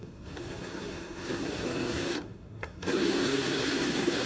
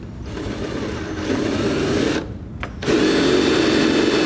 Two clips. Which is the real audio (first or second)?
second